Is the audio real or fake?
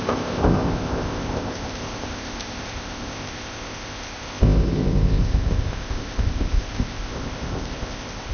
fake